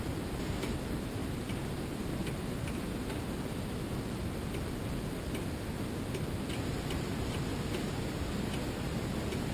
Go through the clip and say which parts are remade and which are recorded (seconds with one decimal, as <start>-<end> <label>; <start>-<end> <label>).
0.0-1.2 recorded; 1.2-4.6 remade; 4.6-7.5 recorded; 7.5-8.4 remade; 8.4-9.5 recorded